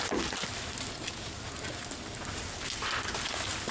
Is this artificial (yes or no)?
no